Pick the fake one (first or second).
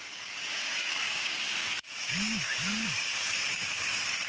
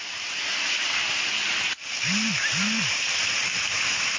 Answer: first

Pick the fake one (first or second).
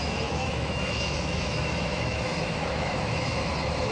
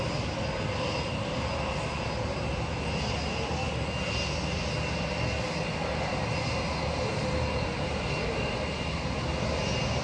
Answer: first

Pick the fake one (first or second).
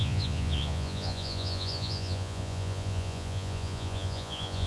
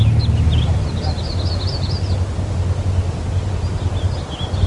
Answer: first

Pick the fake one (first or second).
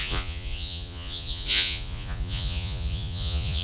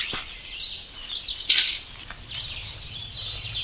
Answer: first